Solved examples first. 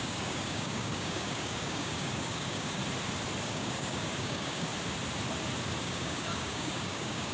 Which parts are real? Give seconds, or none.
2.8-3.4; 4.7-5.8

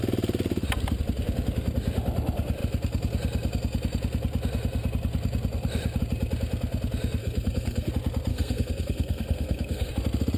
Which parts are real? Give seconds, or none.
0.0-7.2; 7.9-8.3; 9.9-10.4

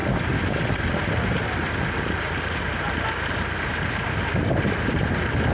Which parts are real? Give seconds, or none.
0.0-5.5

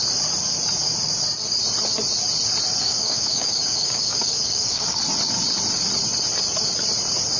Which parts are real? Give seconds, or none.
0.0-2.8; 5.0-7.4